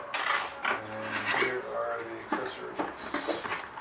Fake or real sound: real